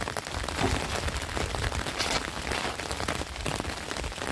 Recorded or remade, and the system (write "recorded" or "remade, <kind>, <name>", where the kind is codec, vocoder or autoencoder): recorded